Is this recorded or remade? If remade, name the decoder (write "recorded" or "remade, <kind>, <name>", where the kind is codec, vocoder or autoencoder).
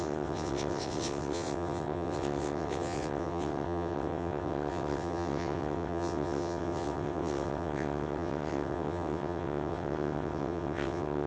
remade, vocoder, WaveNeXt